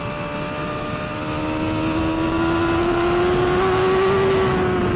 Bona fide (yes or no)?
yes